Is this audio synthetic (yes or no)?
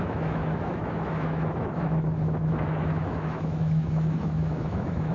yes